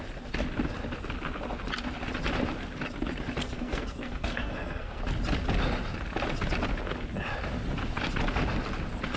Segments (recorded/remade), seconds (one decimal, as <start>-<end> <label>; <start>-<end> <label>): 0.0-3.4 recorded; 3.4-5.0 remade; 5.0-9.2 recorded